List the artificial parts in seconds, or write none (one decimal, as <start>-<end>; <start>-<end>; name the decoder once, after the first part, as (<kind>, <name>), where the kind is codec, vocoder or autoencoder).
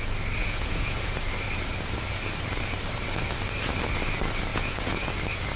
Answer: 0.4-1.2 (vocoder, Vocos); 4.5-5.1